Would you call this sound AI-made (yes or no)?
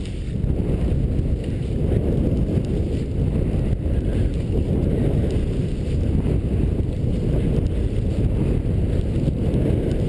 no